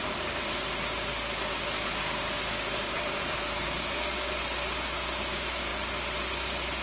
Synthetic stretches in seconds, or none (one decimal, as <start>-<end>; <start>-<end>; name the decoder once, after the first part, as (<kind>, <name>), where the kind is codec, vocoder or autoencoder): 2.0-4.3 (codec, DAC)